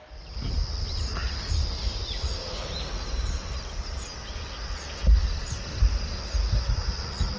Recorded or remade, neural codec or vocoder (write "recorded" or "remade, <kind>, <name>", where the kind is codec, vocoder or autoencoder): recorded